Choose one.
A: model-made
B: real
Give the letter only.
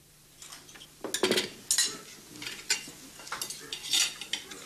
B